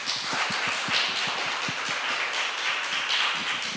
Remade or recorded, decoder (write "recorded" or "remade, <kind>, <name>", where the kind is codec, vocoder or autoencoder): recorded